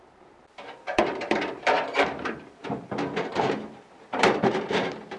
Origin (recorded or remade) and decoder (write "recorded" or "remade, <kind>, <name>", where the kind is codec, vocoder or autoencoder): remade, vocoder, BigVGAN v2